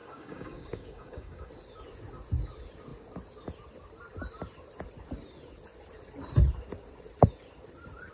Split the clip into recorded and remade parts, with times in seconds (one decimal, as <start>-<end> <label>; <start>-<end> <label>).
0.0-1.5 remade; 1.5-8.1 recorded